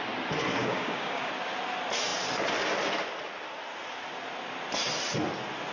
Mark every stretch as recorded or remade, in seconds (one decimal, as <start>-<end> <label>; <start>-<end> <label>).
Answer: 0.0-0.6 recorded; 0.6-1.3 remade; 1.3-5.7 recorded